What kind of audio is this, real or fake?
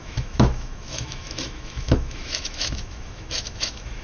fake